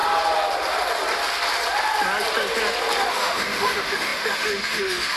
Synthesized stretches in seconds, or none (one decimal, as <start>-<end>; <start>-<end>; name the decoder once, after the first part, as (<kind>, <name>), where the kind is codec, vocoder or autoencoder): 3.1-5.2 (autoencoder, DAC-VAE)